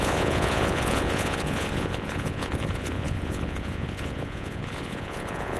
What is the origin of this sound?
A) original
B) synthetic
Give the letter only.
B